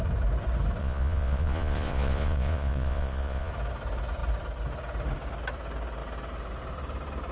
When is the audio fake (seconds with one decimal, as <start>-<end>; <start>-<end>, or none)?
0.8-3.5

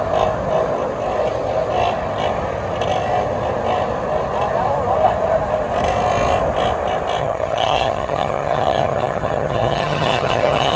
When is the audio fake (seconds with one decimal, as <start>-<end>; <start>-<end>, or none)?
7.2-10.8

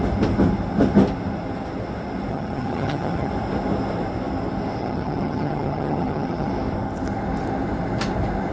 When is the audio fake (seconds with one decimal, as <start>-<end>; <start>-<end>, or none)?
2.3-3.3; 4.8-6.5